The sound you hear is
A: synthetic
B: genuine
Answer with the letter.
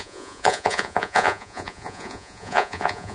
A